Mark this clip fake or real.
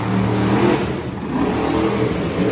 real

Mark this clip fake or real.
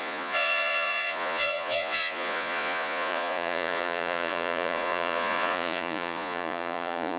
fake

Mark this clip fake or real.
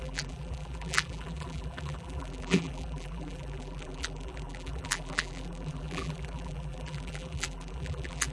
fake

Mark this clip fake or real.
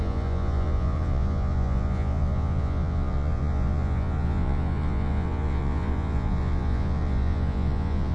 fake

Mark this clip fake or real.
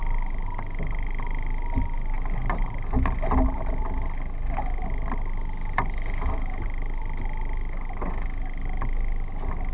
real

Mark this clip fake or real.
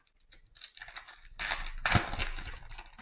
real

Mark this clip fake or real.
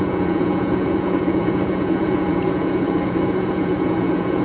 fake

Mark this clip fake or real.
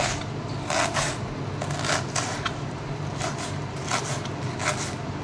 real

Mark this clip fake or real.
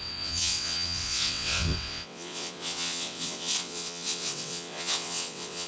fake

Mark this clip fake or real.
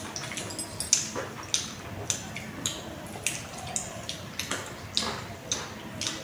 real